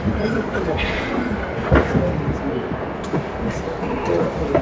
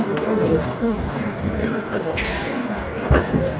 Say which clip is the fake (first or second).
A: second